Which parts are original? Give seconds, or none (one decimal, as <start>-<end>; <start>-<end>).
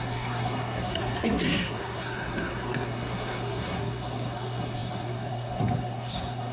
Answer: none